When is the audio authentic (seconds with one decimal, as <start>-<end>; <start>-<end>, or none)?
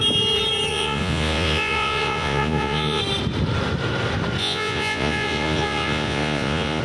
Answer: 0.0-0.7; 3.0-4.4